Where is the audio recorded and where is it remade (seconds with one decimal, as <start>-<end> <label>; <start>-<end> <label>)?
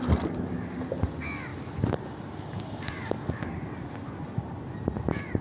0.0-5.4 recorded